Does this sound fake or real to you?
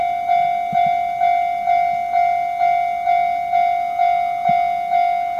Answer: fake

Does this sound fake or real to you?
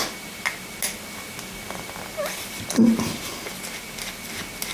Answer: real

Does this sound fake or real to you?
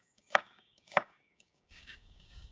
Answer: fake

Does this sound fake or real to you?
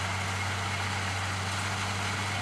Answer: real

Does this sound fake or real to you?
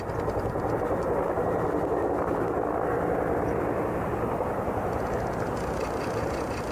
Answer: real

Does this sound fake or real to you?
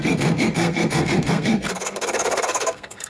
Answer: fake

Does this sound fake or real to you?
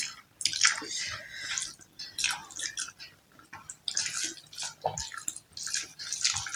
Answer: real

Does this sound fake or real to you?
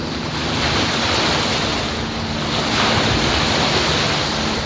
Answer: real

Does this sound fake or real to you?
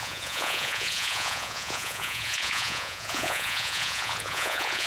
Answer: fake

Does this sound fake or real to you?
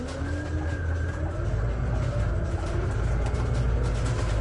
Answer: real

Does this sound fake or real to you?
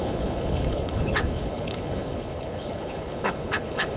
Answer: fake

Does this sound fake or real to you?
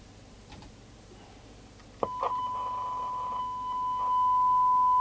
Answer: real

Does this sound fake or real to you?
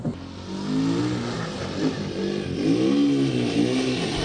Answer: real